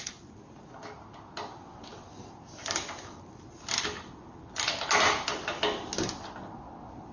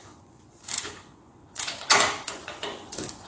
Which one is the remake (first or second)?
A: second